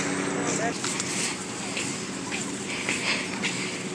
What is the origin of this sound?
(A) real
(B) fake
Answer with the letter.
A